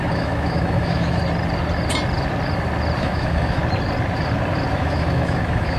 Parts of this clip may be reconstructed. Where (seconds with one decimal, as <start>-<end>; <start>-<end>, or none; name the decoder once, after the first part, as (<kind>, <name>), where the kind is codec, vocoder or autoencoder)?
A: 0.0-1.2 (autoencoder, DAC-VAE); 3.0-3.6; 4.7-5.8